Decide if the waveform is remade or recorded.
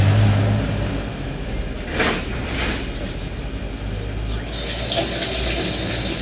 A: recorded